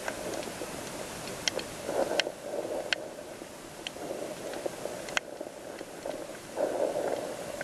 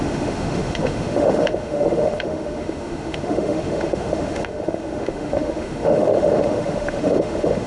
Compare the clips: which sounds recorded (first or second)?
first